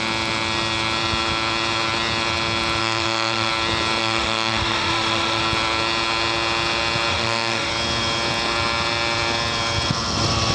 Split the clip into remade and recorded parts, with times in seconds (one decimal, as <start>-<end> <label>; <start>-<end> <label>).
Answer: 0.0-2.8 recorded; 2.8-3.5 remade; 3.5-4.0 recorded; 4.0-5.4 remade; 5.4-7.1 recorded; 7.1-7.7 remade; 7.7-10.5 recorded